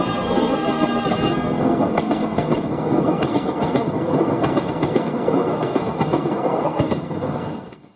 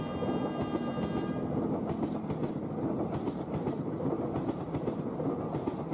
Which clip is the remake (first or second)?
first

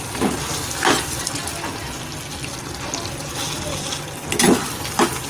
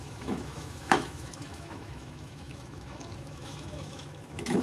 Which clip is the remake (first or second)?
second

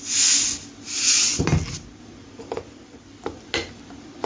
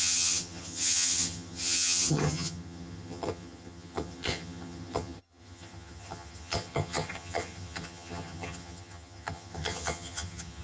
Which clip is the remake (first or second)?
second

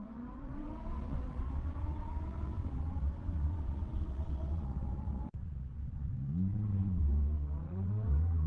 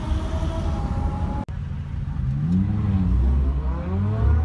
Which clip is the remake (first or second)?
first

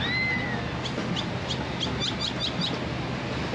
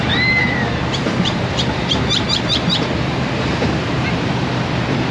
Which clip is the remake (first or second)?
second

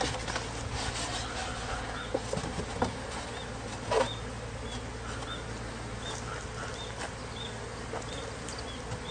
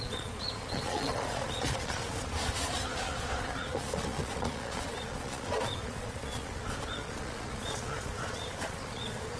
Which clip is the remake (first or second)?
second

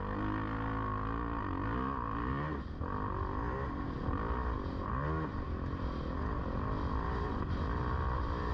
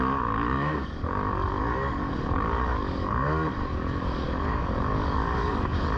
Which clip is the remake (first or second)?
second